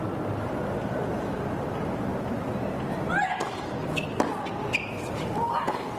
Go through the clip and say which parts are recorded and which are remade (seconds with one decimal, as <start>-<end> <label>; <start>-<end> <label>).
0.0-6.0 recorded